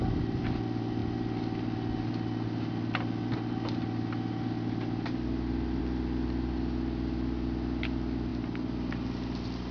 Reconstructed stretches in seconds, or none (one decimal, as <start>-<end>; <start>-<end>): none